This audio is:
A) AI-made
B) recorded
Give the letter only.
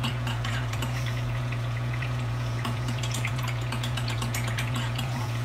A